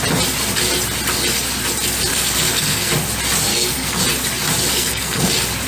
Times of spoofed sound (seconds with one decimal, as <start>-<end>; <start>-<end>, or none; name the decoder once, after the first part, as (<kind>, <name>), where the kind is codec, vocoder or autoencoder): 2.1-2.9 (codec, SNAC); 3.5-4.0; 4.7-5.3